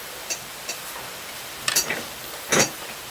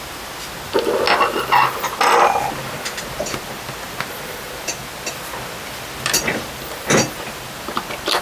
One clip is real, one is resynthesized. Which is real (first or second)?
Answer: second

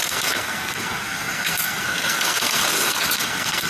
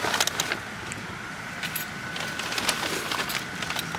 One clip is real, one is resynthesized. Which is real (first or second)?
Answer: second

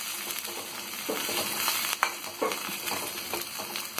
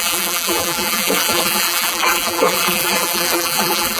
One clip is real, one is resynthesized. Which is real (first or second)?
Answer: first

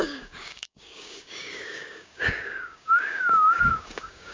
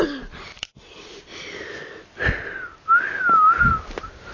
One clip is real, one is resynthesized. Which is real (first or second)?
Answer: second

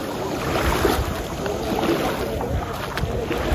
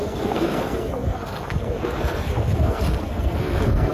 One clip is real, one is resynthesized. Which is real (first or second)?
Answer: first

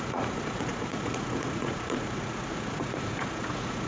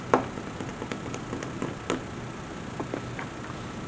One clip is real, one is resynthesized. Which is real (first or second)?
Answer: second